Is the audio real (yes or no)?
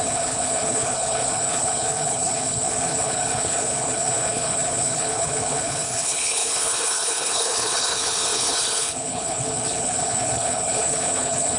no